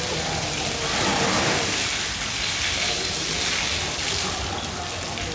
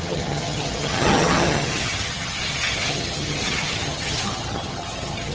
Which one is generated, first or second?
second